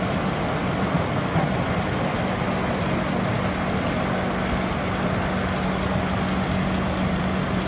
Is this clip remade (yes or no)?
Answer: no